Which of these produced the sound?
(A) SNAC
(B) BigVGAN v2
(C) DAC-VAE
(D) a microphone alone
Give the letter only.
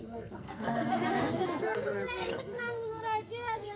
A